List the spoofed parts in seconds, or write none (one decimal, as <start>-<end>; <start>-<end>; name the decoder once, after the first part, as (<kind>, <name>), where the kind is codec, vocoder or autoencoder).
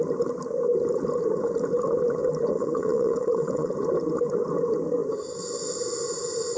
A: 2.5-3.7 (vocoder, WaveNeXt)